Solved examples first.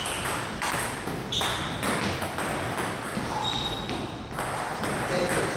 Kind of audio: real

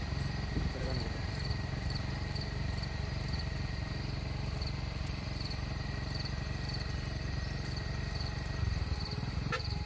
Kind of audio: fake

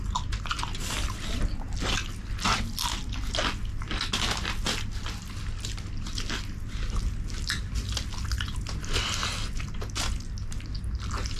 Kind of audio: real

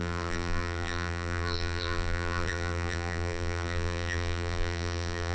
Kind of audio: fake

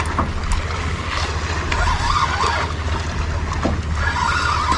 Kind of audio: real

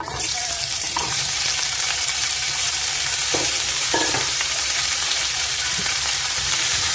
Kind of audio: fake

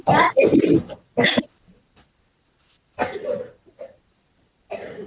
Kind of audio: fake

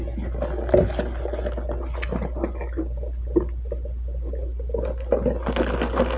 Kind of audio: real